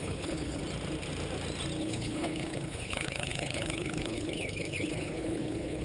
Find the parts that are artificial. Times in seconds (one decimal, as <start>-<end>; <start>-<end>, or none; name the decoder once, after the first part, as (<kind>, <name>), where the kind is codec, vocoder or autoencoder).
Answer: 0.0-0.6 (codec, HILCodec); 1.8-5.8